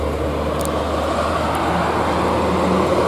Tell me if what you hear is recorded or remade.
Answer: recorded